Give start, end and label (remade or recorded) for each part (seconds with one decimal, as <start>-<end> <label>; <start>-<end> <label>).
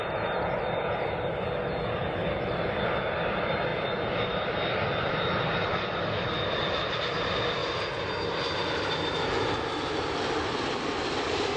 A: 0.0-11.6 recorded